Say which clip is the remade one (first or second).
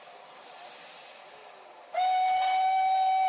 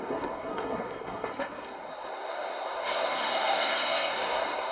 second